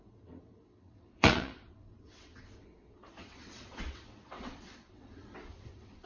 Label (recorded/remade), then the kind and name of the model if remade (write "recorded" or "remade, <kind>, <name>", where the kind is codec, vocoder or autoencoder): remade, vocoder, WaveNeXt